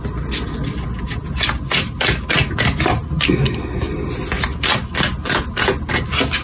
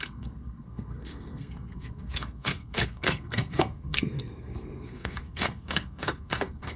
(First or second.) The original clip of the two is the first